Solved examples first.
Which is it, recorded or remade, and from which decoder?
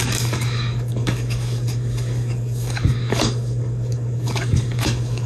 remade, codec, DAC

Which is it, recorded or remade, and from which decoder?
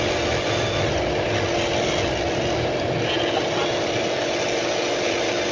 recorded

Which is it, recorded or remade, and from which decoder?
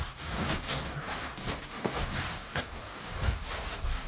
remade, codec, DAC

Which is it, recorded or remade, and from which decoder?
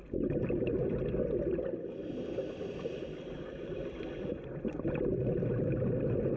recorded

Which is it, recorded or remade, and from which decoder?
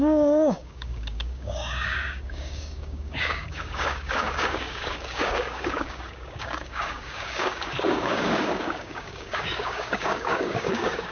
remade, codec, DAC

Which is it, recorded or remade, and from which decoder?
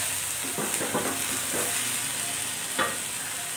recorded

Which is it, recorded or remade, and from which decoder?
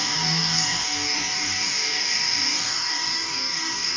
remade, codec, DAC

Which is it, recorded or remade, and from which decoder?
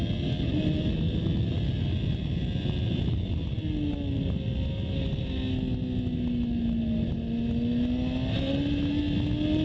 recorded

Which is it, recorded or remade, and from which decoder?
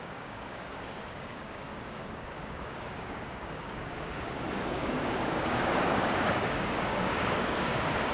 remade, codec, DAC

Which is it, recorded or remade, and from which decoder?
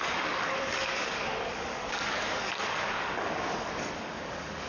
remade, codec, DAC